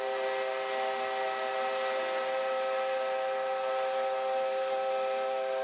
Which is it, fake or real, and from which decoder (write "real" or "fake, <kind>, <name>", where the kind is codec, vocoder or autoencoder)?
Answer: real